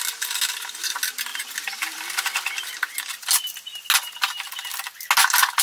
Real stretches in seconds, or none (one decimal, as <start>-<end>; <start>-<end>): 0.0-5.6